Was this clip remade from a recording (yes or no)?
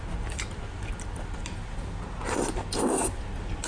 no